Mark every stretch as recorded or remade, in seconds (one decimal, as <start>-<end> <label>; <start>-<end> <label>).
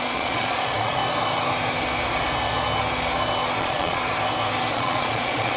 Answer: 0.0-1.0 remade; 1.0-3.6 recorded; 3.6-4.0 remade; 4.0-4.7 recorded; 4.7-5.6 remade